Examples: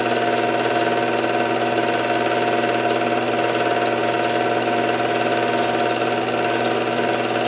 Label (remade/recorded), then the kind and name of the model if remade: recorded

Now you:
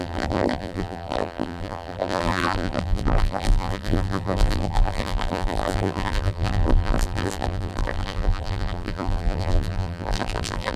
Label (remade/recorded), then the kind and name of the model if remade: remade, vocoder, BigVGAN v2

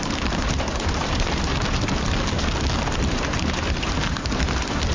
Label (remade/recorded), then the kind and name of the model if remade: remade, vocoder, BigVGAN v2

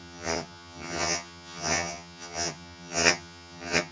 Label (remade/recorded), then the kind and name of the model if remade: remade, vocoder, HiFi-GAN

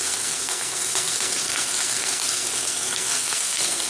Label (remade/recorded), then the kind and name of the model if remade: remade, codec, SNAC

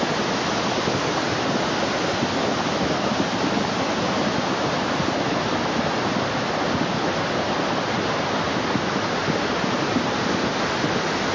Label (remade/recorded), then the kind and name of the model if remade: recorded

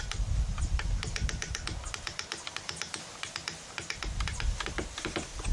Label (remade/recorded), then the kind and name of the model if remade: recorded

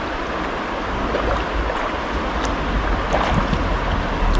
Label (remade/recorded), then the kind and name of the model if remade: recorded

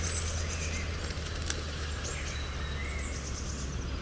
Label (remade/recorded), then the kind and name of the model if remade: recorded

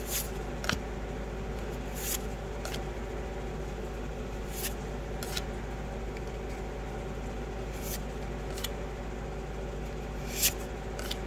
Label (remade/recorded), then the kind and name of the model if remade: recorded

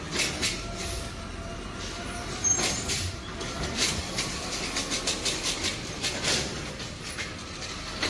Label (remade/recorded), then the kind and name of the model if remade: recorded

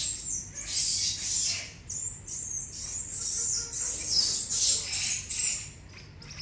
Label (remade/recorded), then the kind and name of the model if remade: recorded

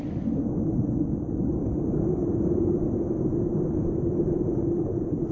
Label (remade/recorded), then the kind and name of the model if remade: recorded